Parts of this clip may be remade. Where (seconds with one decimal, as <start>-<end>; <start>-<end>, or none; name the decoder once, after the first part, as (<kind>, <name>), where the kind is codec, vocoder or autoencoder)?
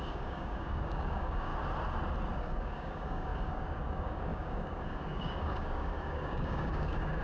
0.0-1.5 (codec, DAC); 2.4-7.2